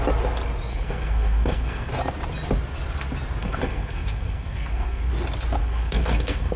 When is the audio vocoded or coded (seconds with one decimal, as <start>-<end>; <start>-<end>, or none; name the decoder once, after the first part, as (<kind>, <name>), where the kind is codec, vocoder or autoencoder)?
0.7-1.9 (codec, SNAC); 3.4-5.1; 5.6-6.6